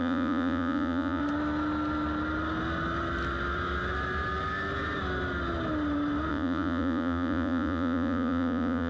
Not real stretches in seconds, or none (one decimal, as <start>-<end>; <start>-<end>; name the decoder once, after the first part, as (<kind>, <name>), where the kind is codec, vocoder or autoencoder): 0.0-1.2 (vocoder, Vocos); 6.3-8.9

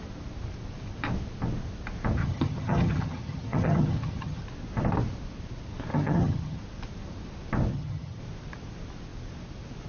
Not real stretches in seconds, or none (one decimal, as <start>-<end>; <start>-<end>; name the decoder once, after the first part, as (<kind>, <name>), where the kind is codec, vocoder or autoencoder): 2.2-4.4 (vocoder, HiFi-GAN); 5.9-6.6; 7.7-8.2

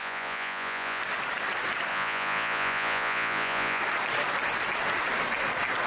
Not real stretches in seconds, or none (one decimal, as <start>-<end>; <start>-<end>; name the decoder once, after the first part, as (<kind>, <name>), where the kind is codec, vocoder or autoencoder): 0.0-1.0 (vocoder, Vocos); 1.9-3.8

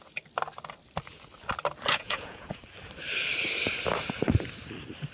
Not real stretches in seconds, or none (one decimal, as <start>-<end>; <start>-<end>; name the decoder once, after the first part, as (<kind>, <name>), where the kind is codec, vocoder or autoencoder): 1.9-2.6 (vocoder, Vocos)

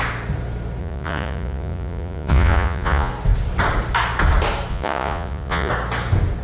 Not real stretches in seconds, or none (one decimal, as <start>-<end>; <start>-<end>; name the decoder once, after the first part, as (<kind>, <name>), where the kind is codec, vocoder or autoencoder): 0.8-3.1 (vocoder, Vocos); 4.7-5.7

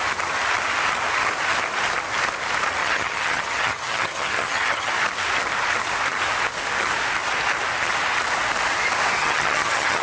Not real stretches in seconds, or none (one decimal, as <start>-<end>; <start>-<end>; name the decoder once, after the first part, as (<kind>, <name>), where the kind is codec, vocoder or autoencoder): 2.8-4.9 (vocoder, HiFi-GAN); 9.2-10.0